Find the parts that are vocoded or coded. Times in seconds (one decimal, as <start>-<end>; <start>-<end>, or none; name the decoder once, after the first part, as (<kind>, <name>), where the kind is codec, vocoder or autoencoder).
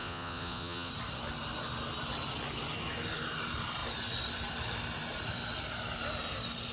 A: 0.0-0.9 (vocoder, Vocos)